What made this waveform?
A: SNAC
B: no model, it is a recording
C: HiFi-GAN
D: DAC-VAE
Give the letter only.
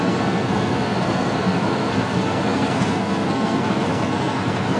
A